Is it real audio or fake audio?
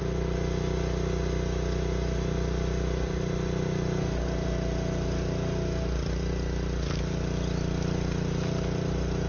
real